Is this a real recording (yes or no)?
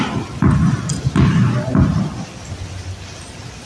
yes